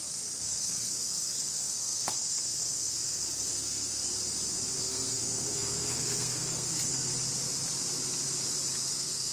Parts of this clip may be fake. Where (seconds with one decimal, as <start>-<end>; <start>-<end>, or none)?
0.0-4.0; 4.8-7.1; 8.9-9.3